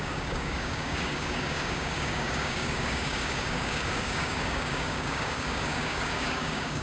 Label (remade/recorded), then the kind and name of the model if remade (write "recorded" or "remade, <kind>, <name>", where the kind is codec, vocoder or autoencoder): remade, codec, DAC